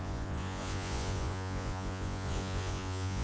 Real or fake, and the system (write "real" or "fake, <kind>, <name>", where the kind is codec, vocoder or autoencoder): fake, vocoder, Vocos